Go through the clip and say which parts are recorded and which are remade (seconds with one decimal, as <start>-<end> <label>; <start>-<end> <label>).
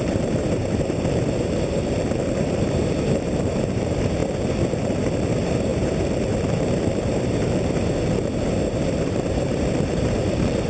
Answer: 0.0-4.2 remade; 4.2-4.9 recorded; 4.9-10.7 remade